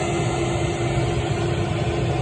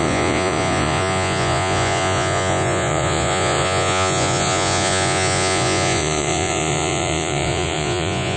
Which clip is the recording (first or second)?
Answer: first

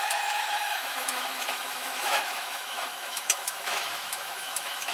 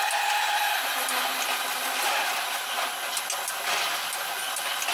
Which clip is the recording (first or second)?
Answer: second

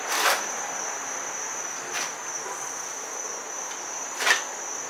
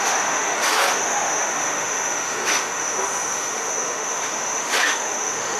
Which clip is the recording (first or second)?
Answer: first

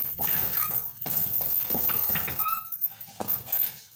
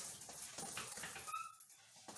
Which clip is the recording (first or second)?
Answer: second